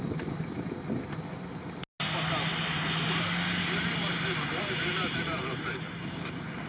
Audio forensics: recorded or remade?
recorded